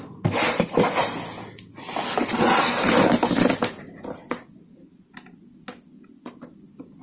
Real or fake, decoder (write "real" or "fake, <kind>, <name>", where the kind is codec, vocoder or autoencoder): real